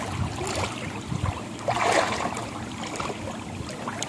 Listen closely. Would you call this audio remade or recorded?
recorded